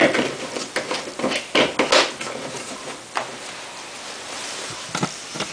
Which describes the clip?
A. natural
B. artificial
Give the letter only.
A